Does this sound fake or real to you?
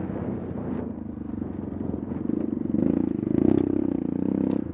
real